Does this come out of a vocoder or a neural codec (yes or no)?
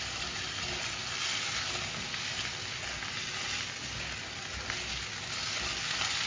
no